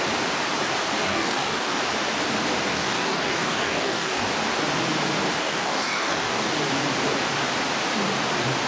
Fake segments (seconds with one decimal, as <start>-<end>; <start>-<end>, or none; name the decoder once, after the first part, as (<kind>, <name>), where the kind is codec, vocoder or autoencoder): 1.0-1.8 (codec, DAC); 2.7-4.3; 5.4-6.5